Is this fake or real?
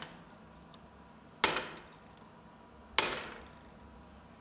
real